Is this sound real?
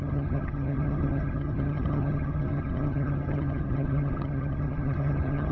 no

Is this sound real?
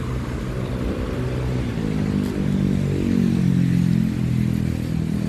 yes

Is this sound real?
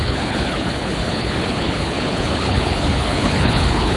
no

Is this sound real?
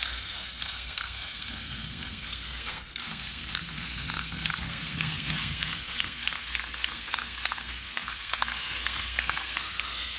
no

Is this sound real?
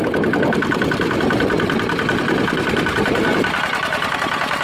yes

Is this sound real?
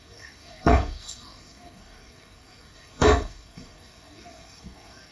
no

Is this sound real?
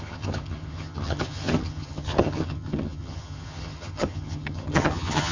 no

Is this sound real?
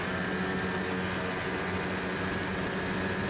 yes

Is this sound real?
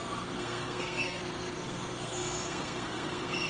no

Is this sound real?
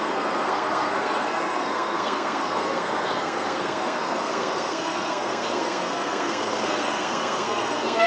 no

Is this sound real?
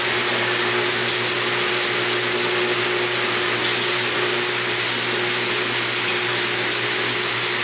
yes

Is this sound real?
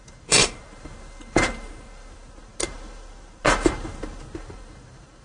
yes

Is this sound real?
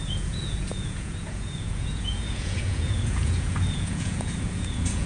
no